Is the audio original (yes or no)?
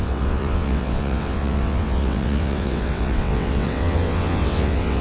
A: no